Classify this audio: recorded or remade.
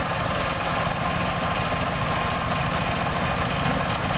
recorded